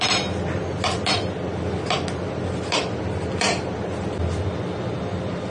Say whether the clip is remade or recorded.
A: recorded